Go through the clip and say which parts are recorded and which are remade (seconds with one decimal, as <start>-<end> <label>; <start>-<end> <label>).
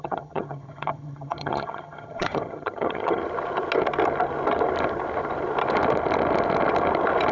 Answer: 0.0-3.2 remade; 3.2-7.3 recorded